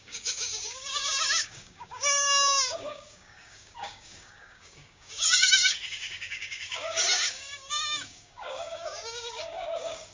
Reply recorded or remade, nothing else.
remade